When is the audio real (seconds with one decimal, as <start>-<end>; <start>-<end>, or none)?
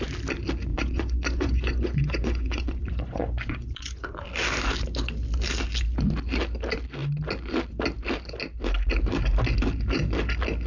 0.0-0.7; 4.2-10.7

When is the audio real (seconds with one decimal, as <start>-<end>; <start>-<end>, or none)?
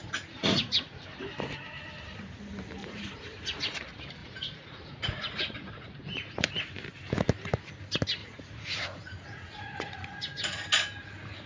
1.0-2.8; 3.8-4.2; 6.6-8.2; 10.6-11.5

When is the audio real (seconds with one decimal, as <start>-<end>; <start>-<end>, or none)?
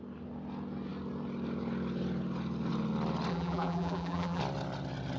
0.0-3.3; 4.4-5.2